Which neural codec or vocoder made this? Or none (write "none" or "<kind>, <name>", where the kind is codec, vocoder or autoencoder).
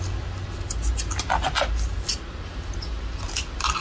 none